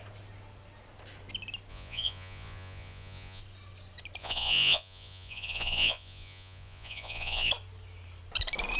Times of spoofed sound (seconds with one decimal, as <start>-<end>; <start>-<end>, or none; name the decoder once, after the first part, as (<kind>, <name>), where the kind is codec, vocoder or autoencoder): 1.7-3.4 (vocoder, Vocos); 4.2-7.5

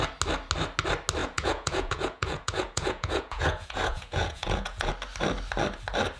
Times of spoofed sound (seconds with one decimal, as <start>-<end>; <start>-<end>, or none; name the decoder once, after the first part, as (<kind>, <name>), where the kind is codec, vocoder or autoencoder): 1.2-4.9 (vocoder, Vocos)

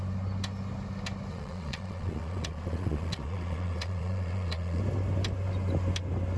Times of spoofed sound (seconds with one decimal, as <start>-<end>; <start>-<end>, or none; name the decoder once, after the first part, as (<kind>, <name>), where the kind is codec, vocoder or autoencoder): 1.3-4.8 (vocoder, Vocos)

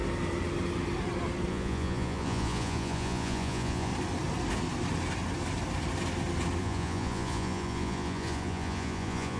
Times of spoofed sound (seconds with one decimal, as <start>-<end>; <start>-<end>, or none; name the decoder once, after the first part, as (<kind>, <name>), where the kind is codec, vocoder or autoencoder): 1.5-3.9 (vocoder, Vocos); 6.6-9.4